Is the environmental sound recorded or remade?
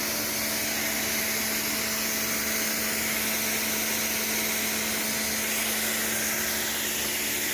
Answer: recorded